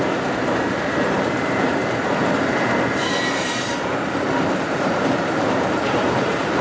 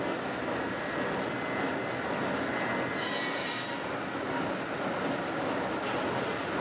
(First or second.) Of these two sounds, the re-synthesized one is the first